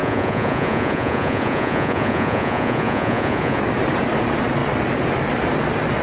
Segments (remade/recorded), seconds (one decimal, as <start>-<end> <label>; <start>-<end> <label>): 0.0-3.6 remade; 3.6-6.0 recorded